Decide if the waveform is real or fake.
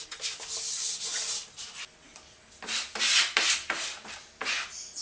real